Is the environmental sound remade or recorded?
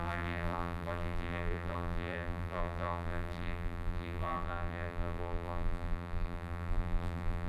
remade